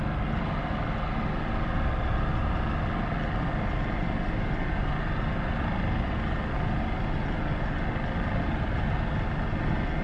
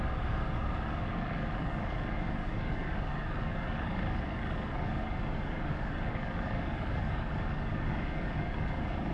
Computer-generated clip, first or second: second